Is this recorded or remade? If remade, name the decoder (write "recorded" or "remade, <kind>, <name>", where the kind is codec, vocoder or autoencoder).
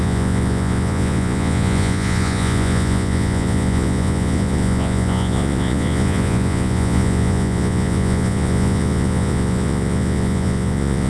remade, vocoder, Vocos